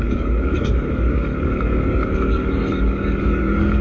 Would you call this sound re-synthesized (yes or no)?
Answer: yes